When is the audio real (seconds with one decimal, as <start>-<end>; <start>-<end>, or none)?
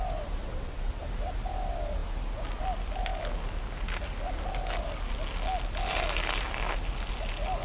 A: 0.0-0.4; 1.0-7.6